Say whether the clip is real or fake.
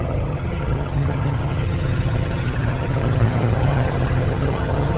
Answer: fake